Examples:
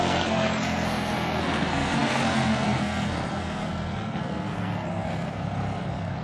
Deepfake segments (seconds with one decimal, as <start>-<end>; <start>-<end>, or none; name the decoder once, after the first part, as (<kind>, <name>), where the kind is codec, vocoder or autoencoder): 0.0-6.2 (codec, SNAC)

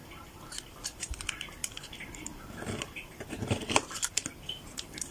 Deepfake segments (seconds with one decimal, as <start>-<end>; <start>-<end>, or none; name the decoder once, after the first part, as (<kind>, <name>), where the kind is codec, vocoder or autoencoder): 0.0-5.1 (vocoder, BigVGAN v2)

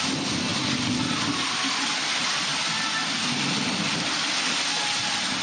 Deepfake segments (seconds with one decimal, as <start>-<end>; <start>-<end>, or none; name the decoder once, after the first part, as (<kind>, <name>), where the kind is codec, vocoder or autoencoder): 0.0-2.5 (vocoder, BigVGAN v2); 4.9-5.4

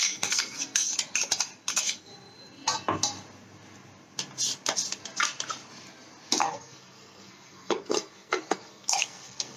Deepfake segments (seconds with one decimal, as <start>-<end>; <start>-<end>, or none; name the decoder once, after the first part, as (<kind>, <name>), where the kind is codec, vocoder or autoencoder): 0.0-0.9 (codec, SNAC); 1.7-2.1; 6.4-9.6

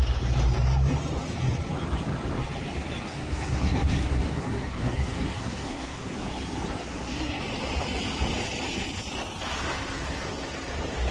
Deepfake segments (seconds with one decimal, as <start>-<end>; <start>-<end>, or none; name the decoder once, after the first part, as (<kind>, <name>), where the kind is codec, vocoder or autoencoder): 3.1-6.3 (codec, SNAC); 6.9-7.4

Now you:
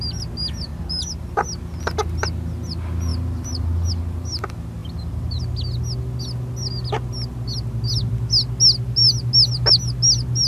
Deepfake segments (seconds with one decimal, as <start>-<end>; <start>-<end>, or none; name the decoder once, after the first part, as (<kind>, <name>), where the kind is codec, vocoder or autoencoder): 0.7-1.2 (vocoder, BigVGAN v2); 3.1-3.9; 4.8-5.4